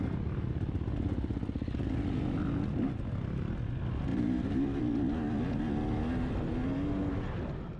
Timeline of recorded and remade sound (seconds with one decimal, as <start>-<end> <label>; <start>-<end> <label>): 0.0-4.1 recorded; 4.1-4.8 remade; 4.8-7.8 recorded